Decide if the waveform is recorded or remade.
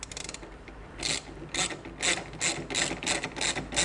recorded